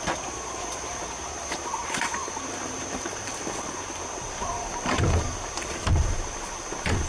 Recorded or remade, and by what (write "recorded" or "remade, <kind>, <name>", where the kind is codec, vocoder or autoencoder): remade, vocoder, BigVGAN v2